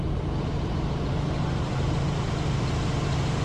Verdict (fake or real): fake